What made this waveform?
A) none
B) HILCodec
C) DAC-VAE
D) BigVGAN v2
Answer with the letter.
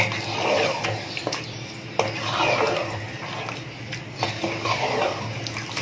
A